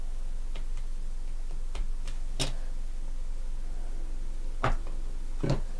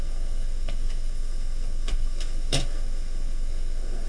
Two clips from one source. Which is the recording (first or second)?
first